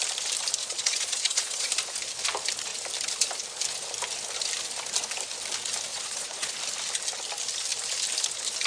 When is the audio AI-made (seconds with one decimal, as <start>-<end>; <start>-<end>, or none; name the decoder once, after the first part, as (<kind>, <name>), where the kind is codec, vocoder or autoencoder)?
0.6-1.7 (vocoder, Vocos); 5.9-6.5

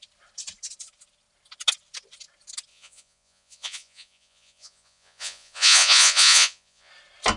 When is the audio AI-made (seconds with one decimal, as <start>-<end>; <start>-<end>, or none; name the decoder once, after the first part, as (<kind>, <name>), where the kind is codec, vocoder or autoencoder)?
2.7-6.9 (vocoder, Vocos)

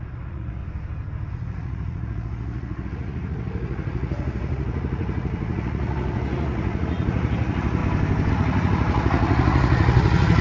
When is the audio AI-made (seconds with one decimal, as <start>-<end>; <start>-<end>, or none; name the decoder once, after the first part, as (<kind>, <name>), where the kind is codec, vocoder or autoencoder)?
0.0-0.6 (vocoder, Vocos); 1.3-7.8; 8.3-10.4

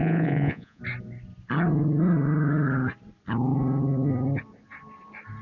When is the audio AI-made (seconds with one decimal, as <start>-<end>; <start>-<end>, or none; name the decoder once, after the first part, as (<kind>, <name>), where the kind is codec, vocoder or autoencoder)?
0.0-0.8 (vocoder, Vocos)

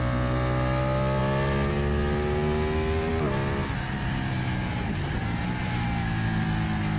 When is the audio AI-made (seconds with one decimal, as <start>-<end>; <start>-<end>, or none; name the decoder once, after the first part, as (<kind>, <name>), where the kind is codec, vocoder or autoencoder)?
none

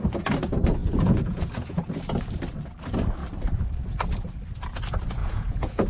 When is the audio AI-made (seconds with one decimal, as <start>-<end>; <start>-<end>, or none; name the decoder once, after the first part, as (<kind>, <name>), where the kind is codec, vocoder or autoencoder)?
0.8-1.9 (vocoder, Vocos); 5.2-5.9

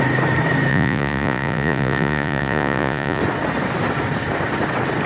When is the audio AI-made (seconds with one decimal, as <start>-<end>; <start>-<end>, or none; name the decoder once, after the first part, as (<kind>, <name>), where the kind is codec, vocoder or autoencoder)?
0.7-3.2 (vocoder, Vocos)

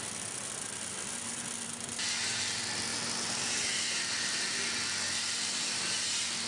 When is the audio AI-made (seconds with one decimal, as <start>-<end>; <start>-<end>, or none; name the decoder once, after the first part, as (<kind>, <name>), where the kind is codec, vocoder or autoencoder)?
none